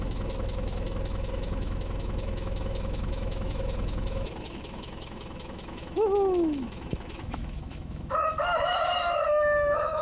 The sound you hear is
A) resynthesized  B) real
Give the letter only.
A